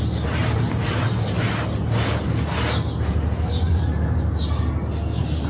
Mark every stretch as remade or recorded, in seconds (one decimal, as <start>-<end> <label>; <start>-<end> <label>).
0.0-5.5 recorded